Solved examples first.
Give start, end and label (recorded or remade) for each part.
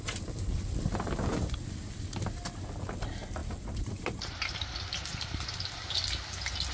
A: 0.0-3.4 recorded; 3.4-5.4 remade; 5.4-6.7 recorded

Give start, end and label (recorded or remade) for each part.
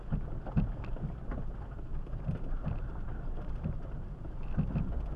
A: 0.0-1.9 recorded; 1.9-4.2 remade; 4.2-5.2 recorded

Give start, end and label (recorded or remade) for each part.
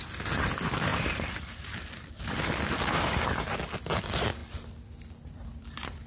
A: 0.0-0.9 recorded; 0.9-2.7 remade; 2.7-4.4 recorded; 4.4-6.1 remade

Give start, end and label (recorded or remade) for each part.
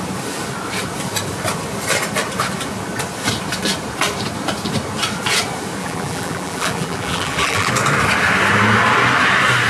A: 0.0-5.8 recorded; 5.8-7.7 remade; 7.7-9.7 recorded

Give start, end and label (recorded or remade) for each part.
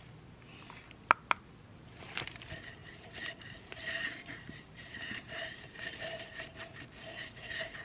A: 0.0-1.7 recorded; 1.7-2.3 remade; 2.3-2.8 recorded; 2.8-6.6 remade; 6.6-7.8 recorded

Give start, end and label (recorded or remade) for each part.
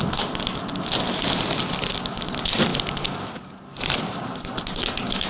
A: 0.0-5.3 recorded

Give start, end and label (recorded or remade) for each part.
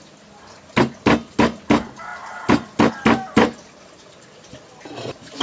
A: 0.0-5.4 recorded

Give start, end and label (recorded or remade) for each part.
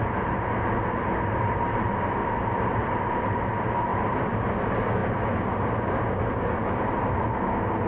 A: 0.0-2.2 recorded; 2.2-3.4 remade; 3.4-3.9 recorded; 3.9-4.4 remade; 4.4-7.9 recorded